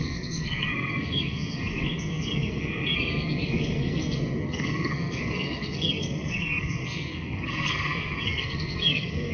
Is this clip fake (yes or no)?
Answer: yes